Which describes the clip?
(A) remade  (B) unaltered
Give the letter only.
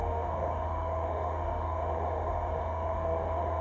A